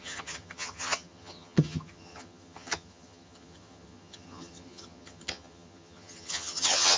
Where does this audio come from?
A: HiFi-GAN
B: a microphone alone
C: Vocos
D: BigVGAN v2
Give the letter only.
A